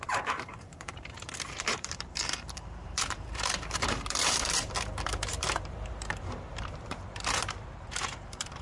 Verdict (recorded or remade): remade